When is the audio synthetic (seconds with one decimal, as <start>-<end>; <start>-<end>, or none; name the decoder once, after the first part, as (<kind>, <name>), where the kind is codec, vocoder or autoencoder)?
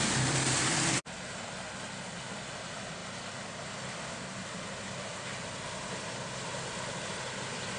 none